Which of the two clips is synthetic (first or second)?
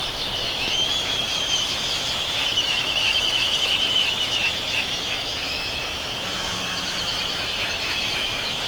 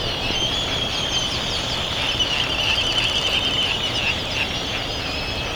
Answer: first